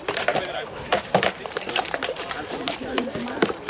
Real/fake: fake